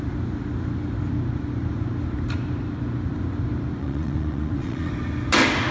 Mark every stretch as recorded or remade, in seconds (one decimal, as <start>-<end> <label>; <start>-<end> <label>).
0.0-3.8 recorded; 3.8-4.9 remade; 4.9-5.7 recorded